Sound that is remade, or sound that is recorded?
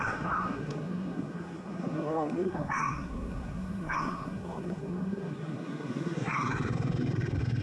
remade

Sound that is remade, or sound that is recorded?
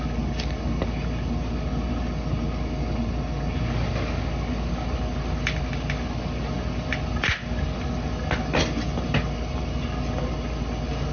recorded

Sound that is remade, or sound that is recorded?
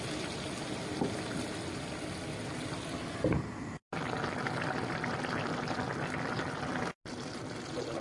recorded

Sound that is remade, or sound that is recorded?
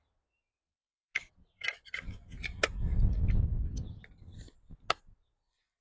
recorded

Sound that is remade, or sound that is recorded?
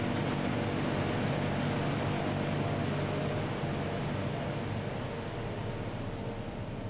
recorded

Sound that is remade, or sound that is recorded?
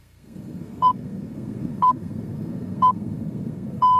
remade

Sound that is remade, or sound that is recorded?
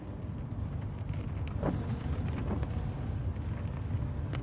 recorded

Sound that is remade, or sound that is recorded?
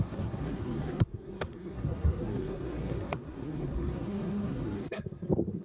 remade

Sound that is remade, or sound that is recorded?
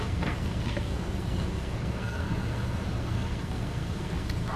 remade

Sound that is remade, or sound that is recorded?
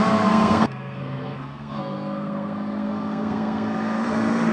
remade